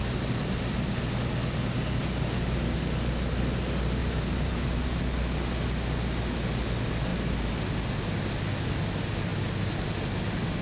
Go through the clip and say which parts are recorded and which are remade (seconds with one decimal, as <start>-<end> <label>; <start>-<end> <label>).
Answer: 0.0-4.0 recorded; 4.0-5.0 remade; 5.0-10.6 recorded